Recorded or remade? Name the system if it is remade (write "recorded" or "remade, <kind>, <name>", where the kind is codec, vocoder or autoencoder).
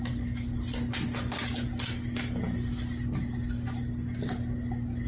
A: recorded